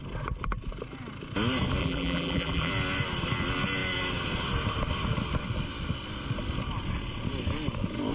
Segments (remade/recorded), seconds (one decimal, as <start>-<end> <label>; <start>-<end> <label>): 0.0-1.8 recorded; 1.8-2.7 remade; 2.7-8.1 recorded